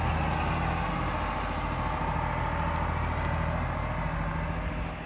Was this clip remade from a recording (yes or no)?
no